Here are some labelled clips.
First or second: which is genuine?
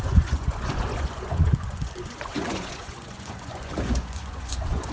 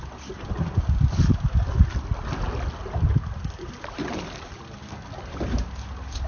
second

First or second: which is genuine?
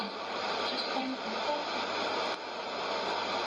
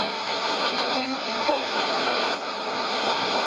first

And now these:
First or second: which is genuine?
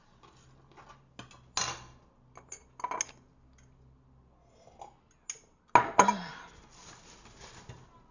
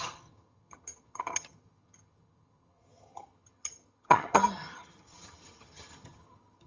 first